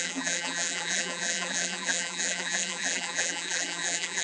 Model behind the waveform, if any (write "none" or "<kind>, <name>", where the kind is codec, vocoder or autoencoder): vocoder, BigVGAN v2